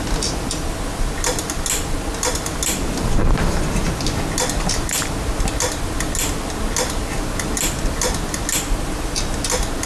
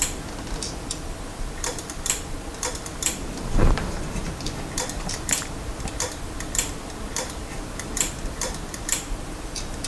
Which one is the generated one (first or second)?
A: second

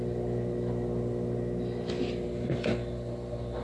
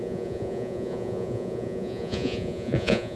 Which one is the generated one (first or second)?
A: second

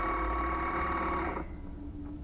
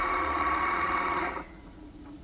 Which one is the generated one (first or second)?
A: second